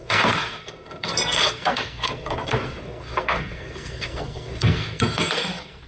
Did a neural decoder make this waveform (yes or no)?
yes